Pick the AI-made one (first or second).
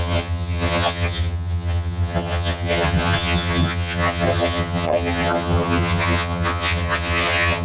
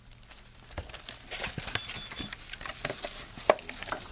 first